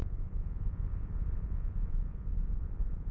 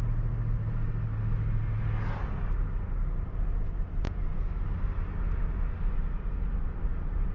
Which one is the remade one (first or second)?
first